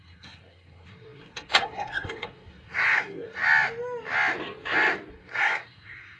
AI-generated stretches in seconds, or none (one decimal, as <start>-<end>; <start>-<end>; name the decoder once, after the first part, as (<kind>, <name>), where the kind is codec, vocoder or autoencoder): 0.0-3.4 (codec, SNAC); 5.1-6.2